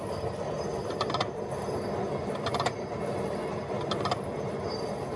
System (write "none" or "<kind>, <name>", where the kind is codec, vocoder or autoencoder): none